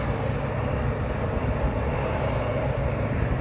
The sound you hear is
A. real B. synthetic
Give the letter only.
A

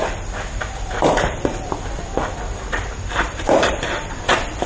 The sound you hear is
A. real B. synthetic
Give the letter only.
B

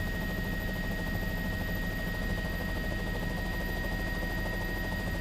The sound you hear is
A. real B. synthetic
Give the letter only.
A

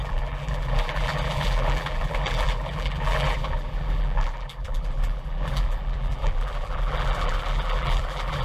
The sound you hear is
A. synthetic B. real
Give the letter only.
A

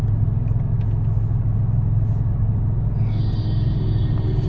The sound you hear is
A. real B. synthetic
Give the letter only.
A